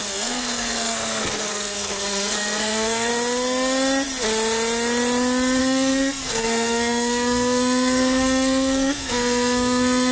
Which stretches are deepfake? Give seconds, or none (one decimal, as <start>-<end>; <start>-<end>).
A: 0.0-3.1; 5.6-10.1